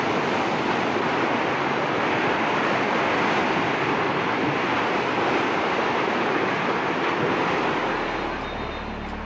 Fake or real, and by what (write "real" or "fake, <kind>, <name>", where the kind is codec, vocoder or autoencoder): real